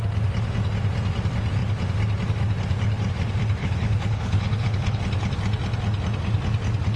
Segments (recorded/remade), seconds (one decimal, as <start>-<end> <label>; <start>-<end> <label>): 0.0-3.6 recorded; 3.6-5.0 remade; 5.0-7.0 recorded